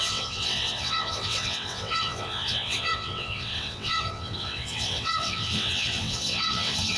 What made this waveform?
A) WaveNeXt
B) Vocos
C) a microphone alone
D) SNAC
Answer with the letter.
A